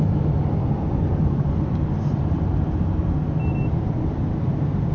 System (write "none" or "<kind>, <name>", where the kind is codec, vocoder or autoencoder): none